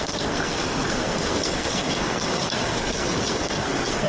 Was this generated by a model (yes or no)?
yes